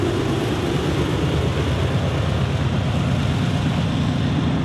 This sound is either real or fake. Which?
real